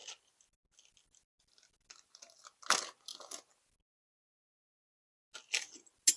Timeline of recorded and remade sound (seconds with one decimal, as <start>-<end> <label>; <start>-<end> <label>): 0.0-6.2 recorded